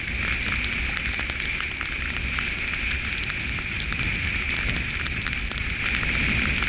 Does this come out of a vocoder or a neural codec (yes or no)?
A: no